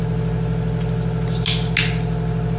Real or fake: real